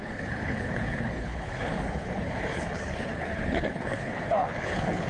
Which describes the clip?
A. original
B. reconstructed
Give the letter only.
B